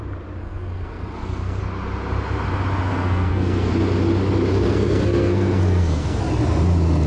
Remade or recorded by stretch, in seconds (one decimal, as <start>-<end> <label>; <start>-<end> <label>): 0.0-0.4 recorded; 0.4-1.6 remade; 1.6-2.9 recorded; 2.9-3.7 remade; 3.7-4.5 recorded; 4.5-6.2 remade; 6.2-7.1 recorded